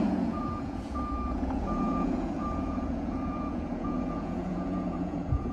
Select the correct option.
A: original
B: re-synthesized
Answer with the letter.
B